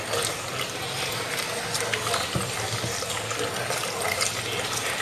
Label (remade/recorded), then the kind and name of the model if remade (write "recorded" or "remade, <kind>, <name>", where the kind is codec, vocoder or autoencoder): recorded